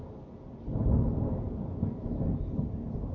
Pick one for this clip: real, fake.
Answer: real